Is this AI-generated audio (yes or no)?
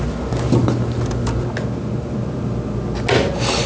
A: no